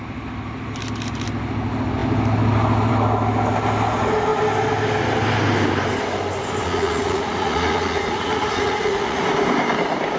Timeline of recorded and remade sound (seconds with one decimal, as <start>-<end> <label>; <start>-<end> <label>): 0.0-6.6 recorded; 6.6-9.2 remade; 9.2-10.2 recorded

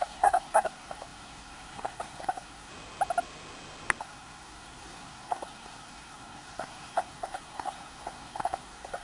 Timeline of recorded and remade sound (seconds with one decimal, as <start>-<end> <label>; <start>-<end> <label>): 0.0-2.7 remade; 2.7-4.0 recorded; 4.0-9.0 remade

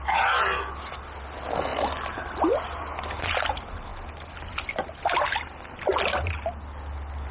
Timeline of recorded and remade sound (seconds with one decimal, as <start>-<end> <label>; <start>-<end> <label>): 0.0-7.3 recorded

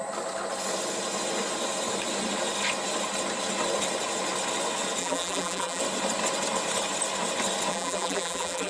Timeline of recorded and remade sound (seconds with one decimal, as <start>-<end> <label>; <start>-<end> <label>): 0.0-5.0 recorded; 5.0-5.8 remade; 5.8-7.7 recorded; 7.7-8.7 remade